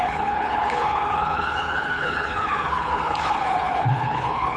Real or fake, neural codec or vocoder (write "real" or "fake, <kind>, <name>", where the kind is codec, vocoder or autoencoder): fake, codec, HILCodec